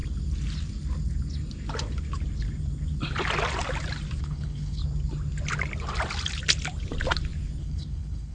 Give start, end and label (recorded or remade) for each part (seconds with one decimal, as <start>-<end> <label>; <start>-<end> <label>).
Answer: 0.0-4.2 recorded; 4.2-4.8 remade; 4.8-7.6 recorded; 7.6-8.3 remade